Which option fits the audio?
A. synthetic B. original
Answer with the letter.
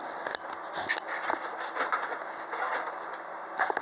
B